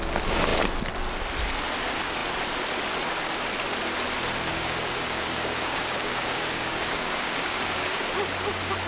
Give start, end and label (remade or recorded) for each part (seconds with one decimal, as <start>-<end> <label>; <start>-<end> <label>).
0.0-4.5 recorded; 4.5-8.0 remade; 8.0-8.9 recorded